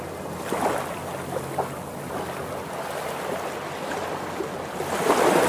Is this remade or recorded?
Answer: recorded